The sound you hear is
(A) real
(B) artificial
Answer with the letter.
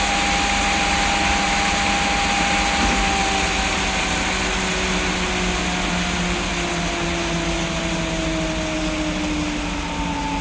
A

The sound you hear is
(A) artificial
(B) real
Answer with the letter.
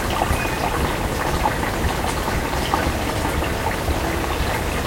B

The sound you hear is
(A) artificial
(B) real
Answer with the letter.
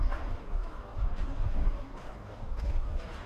A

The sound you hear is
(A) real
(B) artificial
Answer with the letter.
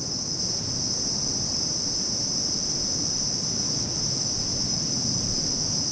A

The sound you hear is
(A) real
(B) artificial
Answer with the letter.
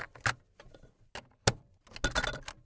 A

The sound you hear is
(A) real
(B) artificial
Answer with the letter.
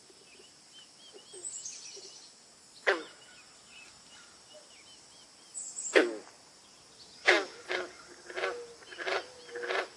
A